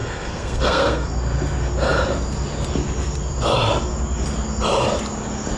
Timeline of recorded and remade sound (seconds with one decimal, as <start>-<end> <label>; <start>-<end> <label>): 0.0-1.1 remade; 1.1-5.6 recorded